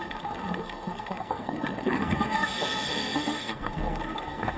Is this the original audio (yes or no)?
no